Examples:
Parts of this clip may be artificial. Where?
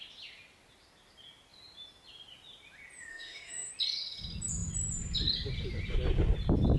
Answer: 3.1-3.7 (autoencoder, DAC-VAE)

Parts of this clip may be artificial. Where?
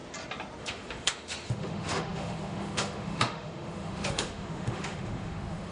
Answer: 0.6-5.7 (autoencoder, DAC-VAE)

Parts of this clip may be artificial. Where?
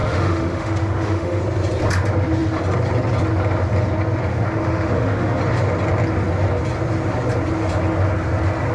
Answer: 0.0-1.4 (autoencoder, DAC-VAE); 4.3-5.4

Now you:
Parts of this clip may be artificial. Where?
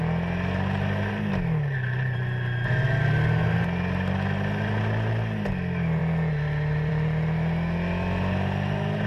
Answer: none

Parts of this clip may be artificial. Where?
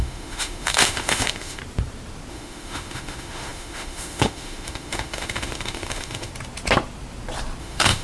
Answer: 0.0-1.6 (autoencoder, DAC-VAE); 2.3-6.3; 7.6-8.0